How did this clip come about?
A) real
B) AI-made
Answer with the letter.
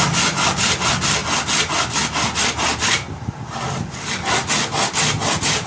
A